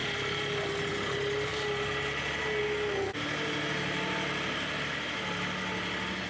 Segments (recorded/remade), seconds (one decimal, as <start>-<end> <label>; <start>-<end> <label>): 0.0-6.3 recorded